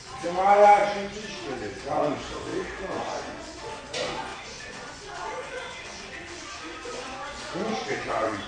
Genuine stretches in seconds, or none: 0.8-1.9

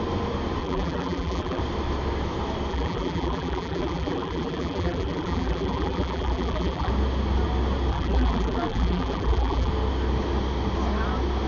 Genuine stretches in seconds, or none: 0.0-0.6; 1.6-2.7; 6.9-7.9; 9.7-11.5

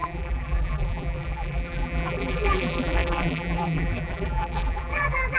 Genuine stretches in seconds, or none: none

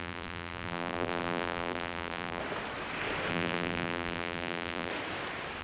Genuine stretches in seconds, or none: 2.4-3.3; 4.9-5.6

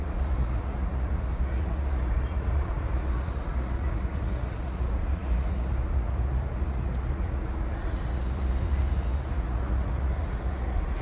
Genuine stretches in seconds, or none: none